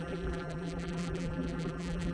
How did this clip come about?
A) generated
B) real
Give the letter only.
A